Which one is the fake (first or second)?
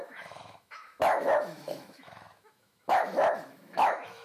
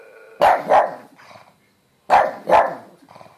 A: first